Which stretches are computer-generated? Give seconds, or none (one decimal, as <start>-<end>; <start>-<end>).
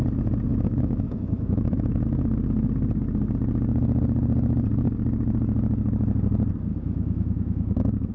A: 0.5-2.0; 6.7-8.1